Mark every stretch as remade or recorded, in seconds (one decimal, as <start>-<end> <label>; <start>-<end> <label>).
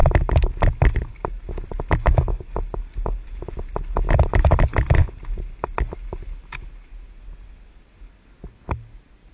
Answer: 0.0-9.3 recorded